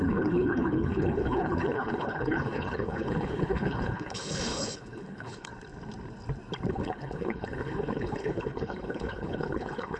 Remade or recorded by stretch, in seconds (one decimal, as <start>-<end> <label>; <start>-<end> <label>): 0.0-5.5 remade; 5.5-6.7 recorded; 6.7-10.0 remade